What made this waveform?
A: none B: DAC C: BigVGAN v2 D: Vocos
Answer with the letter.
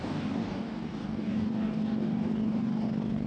B